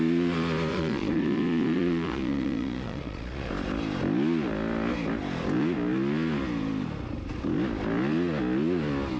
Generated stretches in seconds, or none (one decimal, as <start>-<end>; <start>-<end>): 0.7-3.5